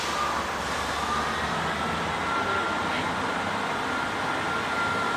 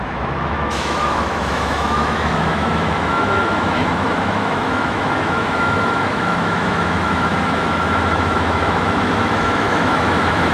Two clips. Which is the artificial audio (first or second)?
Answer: second